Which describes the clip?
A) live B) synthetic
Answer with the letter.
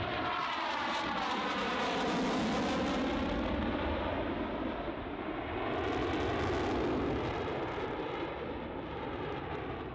A